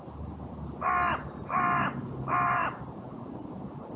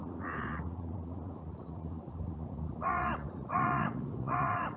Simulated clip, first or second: second